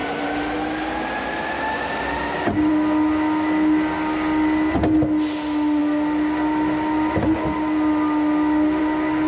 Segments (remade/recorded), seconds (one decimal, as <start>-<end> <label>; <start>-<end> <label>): 0.0-9.3 recorded